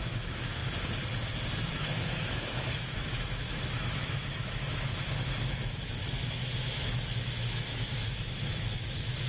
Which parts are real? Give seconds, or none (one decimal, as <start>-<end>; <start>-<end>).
0.6-1.7